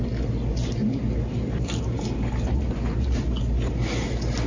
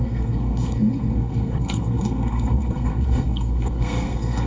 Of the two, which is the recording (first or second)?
first